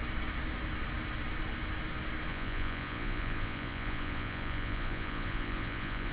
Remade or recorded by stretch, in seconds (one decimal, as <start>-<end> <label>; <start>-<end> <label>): 0.0-2.3 recorded; 2.3-6.1 remade